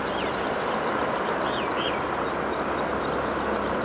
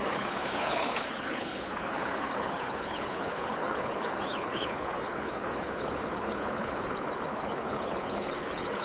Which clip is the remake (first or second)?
second